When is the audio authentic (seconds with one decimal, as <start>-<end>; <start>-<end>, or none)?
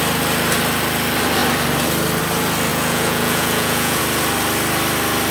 0.0-2.7; 4.0-5.3